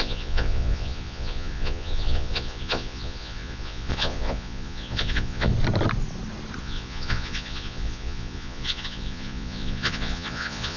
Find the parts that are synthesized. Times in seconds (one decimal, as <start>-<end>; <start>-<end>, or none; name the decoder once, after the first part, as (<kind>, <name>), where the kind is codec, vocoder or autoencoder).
0.0-5.5 (vocoder, Vocos); 6.6-10.8